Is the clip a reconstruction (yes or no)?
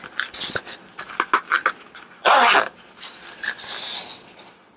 no